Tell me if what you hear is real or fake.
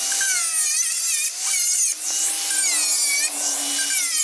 real